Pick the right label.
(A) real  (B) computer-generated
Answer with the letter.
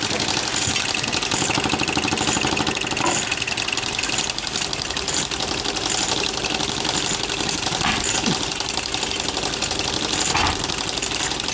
A